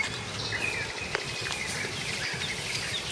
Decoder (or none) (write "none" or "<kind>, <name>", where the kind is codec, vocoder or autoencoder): none